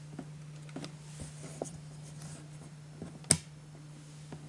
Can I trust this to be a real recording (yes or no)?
yes